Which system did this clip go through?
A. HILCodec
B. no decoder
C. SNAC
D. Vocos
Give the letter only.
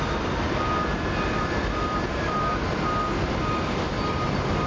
B